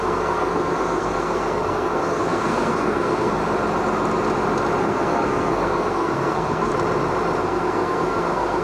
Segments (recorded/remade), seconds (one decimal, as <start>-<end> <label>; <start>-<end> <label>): 0.0-3.4 remade; 3.4-4.8 recorded; 4.8-6.7 remade; 6.7-7.4 recorded; 7.4-8.6 remade